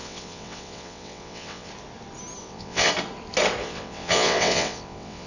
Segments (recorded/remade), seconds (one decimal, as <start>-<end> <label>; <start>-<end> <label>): 0.0-1.7 remade; 1.7-2.4 recorded; 2.4-2.9 remade; 2.9-3.6 recorded; 3.6-5.3 remade